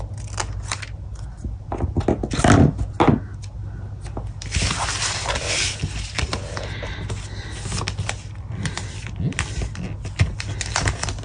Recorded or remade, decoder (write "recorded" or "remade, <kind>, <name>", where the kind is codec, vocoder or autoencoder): recorded